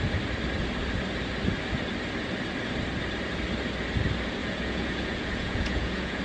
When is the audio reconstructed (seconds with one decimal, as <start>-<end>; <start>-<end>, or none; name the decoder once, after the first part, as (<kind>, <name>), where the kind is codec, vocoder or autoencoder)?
4.4-6.2 (vocoder, Vocos)

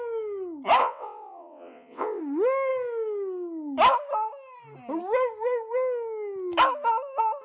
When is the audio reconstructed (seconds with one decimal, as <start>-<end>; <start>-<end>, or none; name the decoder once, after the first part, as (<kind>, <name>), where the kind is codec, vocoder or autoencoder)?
0.8-2.2 (vocoder, WaveNeXt)

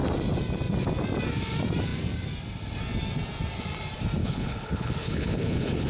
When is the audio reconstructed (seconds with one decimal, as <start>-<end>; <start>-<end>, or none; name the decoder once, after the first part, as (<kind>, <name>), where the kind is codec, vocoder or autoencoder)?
4.2-5.9 (codec, HILCodec)